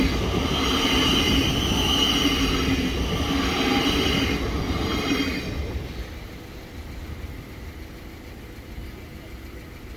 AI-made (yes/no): no